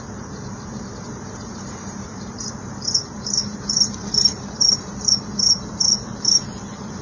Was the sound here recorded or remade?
remade